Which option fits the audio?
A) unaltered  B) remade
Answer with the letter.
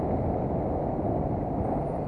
A